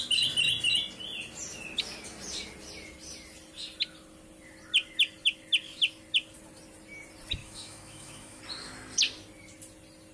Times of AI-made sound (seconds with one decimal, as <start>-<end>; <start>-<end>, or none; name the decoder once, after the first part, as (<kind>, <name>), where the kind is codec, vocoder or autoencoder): 7.4-8.4 (autoencoder, DAC-VAE)